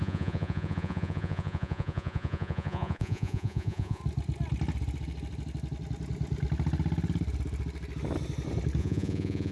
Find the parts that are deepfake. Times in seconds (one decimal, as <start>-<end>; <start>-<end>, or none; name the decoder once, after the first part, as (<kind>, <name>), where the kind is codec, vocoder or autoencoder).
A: 0.0-4.0 (vocoder, Vocos); 8.8-9.5